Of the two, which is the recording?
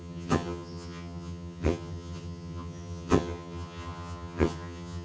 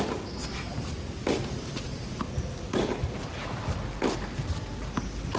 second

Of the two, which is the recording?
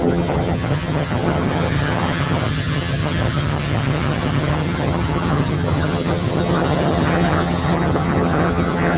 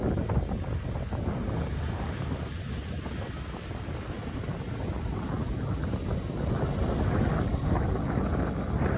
second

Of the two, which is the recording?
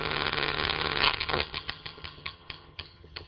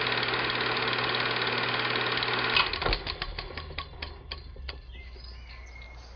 second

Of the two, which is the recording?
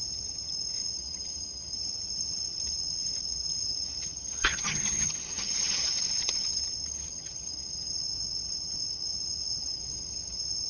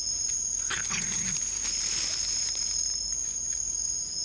second